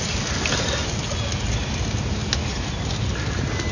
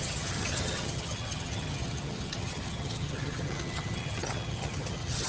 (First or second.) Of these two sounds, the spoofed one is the second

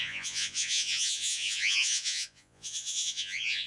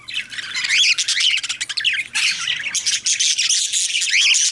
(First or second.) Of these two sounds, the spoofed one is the first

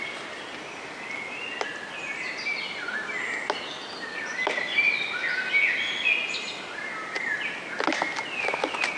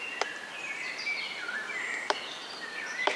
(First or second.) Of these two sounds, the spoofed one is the second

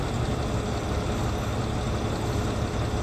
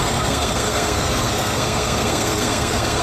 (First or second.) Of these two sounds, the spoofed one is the second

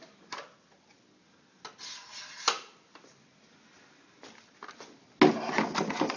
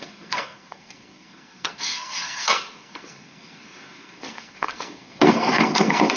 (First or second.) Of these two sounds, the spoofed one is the second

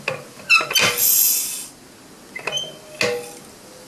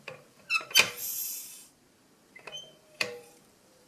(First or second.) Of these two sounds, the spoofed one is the second